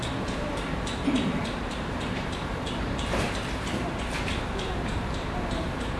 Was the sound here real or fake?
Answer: fake